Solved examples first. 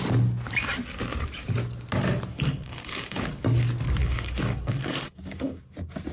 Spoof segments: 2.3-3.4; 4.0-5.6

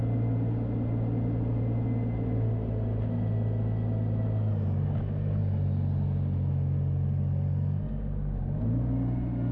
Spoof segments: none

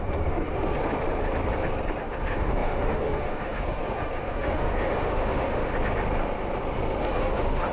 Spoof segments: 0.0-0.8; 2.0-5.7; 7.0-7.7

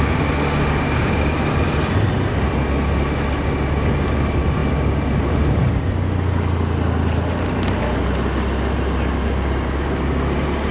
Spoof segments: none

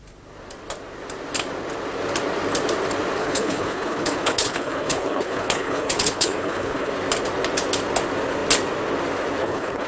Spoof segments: 3.2-6.9; 9.4-9.9

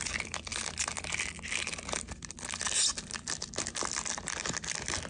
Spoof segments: none

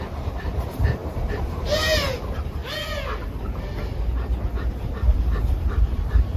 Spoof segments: 0.0-2.6; 4.7-6.4

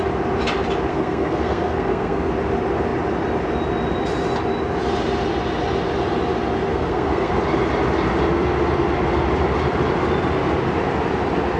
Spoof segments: 0.9-2.3; 6.7-7.3